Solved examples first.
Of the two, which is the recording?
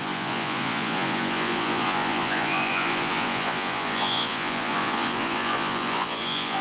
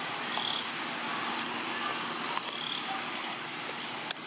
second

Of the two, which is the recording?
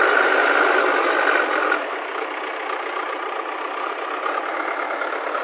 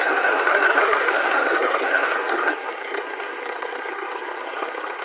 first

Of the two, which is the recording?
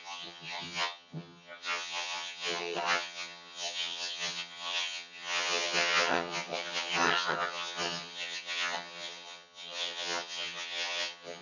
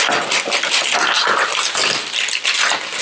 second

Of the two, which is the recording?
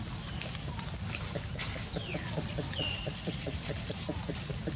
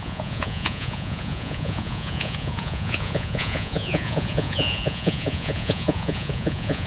first